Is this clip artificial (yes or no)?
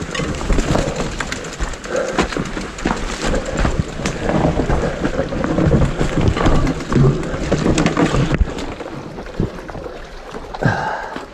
no